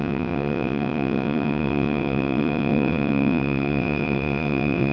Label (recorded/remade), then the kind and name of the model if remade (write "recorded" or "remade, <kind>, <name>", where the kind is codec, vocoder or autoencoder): remade, vocoder, WaveNeXt